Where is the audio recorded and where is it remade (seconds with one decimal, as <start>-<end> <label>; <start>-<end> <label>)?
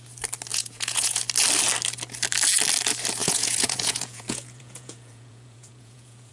0.0-0.5 recorded; 0.5-1.2 remade; 1.2-3.2 recorded; 3.2-6.3 remade